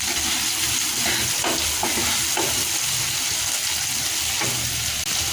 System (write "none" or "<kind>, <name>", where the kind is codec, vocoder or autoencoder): none